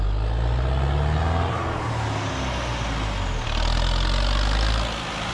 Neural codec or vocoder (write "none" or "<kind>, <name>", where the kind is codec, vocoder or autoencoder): none